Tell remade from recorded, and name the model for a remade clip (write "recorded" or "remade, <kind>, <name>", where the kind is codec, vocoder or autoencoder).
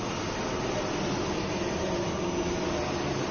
recorded